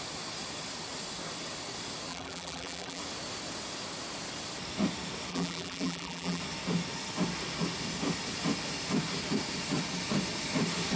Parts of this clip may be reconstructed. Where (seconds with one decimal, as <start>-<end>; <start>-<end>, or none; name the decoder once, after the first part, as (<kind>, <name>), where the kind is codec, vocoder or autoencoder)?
2.1-3.0 (vocoder, BigVGAN v2); 5.3-6.4